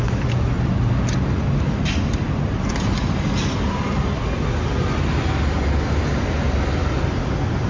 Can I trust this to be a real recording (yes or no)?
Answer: yes